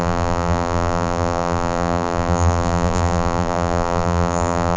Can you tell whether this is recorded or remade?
remade